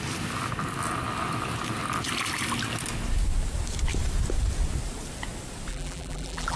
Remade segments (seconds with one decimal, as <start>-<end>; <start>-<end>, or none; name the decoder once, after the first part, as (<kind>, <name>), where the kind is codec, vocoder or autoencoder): 5.7-6.6 (vocoder, BigVGAN v2)